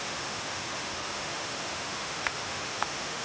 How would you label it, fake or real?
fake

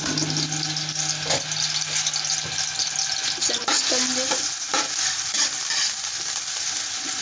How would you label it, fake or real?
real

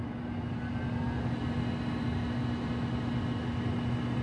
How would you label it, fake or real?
real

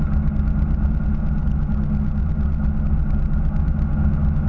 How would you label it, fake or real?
real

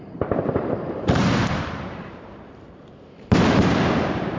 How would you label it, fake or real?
fake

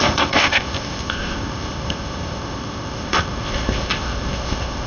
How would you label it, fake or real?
fake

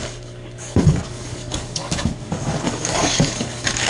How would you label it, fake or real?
fake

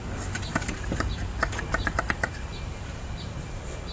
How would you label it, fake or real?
fake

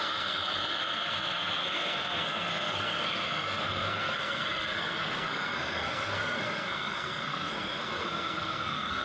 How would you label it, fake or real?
fake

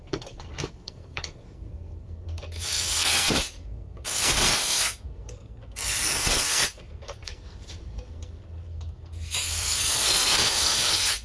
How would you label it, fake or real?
fake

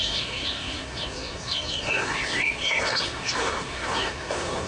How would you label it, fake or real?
fake